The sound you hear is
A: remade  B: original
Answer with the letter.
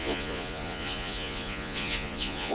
A